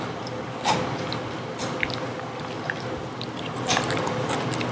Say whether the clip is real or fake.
real